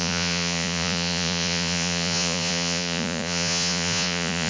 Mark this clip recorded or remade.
remade